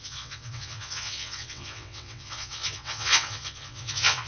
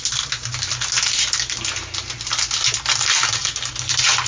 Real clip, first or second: second